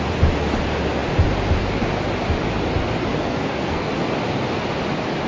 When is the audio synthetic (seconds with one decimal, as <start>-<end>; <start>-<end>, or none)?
3.1-3.9